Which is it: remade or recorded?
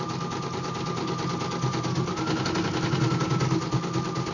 recorded